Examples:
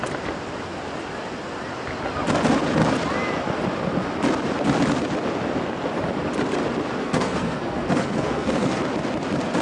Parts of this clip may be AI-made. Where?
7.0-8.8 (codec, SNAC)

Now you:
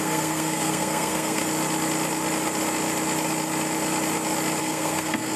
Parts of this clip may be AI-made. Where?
0.0-1.4 (codec, SNAC); 4.6-5.4

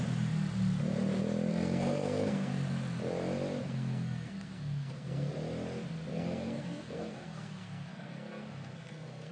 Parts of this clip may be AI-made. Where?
1.5-2.5 (codec, SNAC); 3.6-5.3; 6.1-9.3

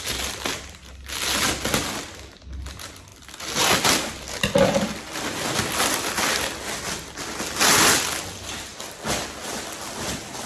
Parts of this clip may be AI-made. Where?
none

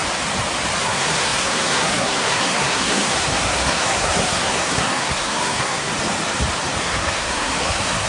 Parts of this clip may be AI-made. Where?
0.8-5.9 (codec, SNAC); 6.8-8.1

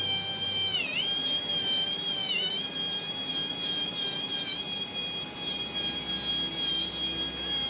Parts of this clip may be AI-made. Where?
none

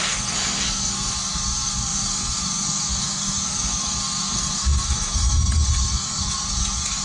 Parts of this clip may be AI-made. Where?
0.0-7.0 (codec, SNAC)

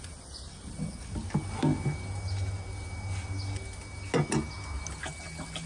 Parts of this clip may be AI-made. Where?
none